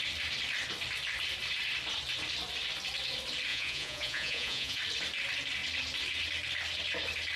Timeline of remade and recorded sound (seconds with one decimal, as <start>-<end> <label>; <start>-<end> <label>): 0.0-3.5 recorded; 3.5-4.8 remade; 4.8-7.4 recorded